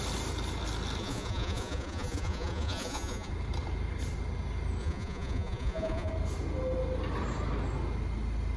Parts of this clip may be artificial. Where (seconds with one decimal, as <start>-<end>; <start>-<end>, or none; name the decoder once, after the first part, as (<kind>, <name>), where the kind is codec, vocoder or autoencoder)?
1.0-3.3 (vocoder, Vocos); 4.8-6.1